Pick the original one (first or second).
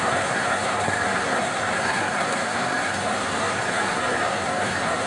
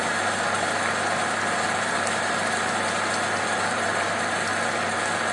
second